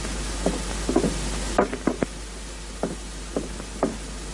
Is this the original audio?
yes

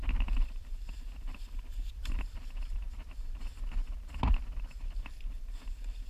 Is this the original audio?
yes